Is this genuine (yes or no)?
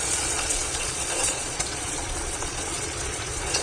no